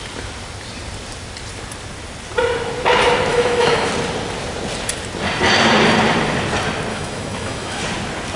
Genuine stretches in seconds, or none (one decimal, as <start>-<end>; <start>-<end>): 0.0-3.3; 3.9-6.9; 7.8-8.4